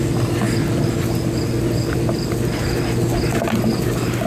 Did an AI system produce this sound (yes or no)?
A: no